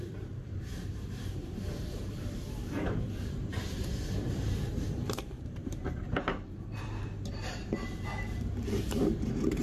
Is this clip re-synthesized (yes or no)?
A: yes